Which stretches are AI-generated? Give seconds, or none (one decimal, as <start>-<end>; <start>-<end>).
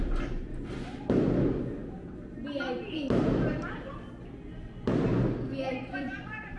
none